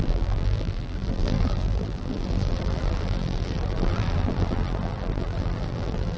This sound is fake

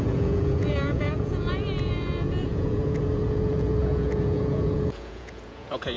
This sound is fake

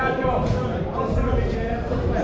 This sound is fake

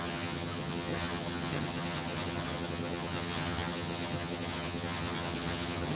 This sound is fake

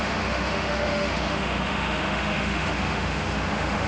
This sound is fake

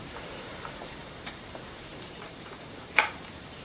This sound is fake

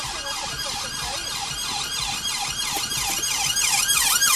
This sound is fake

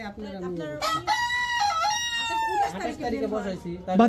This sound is real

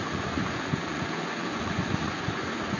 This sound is fake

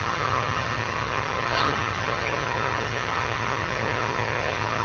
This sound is fake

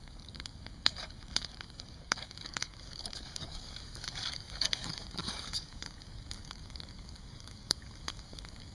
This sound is fake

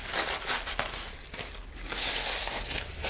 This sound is real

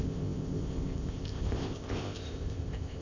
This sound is fake